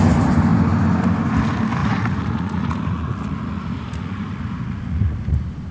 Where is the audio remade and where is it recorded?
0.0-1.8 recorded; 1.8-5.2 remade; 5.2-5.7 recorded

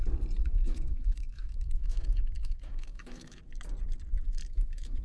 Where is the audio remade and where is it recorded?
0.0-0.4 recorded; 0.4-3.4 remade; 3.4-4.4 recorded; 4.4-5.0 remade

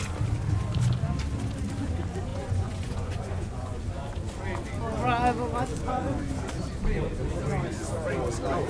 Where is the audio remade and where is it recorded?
0.0-2.3 recorded; 2.3-3.8 remade; 3.8-5.7 recorded; 5.7-6.3 remade; 6.3-8.7 recorded

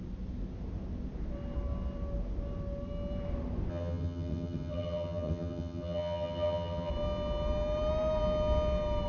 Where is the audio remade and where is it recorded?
0.0-3.7 recorded; 3.7-6.9 remade; 6.9-9.1 recorded